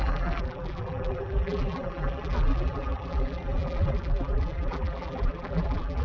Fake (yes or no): yes